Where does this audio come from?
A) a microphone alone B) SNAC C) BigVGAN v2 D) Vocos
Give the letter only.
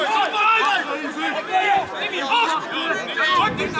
A